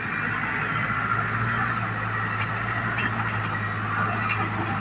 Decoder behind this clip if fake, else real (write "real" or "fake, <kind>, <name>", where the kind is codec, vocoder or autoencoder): real